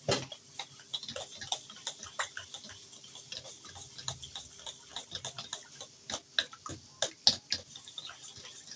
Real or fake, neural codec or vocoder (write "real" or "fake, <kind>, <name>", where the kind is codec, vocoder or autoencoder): real